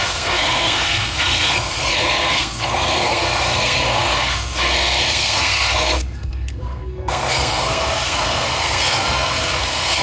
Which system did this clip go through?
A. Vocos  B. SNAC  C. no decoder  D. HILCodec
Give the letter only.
B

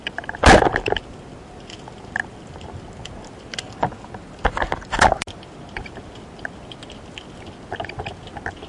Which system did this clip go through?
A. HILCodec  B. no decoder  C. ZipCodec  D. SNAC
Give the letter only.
B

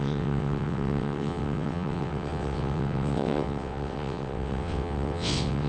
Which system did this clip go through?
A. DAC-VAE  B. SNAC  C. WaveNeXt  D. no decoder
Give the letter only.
C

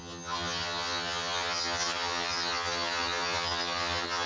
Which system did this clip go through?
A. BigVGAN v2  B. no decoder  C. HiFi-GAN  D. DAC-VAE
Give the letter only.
C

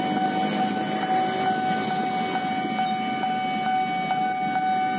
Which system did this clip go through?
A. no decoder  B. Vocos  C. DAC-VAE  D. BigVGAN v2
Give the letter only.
A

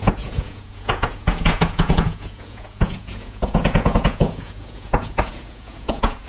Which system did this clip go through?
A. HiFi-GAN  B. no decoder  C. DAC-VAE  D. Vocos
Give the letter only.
D